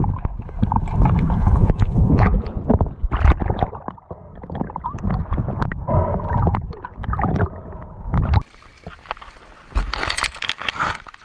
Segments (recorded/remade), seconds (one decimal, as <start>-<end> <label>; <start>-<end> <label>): 0.0-1.4 recorded; 1.4-2.6 remade; 2.6-11.2 recorded